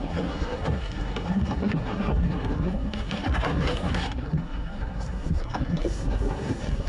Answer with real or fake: fake